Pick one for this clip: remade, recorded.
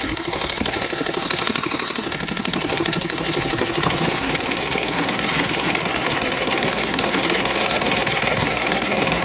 remade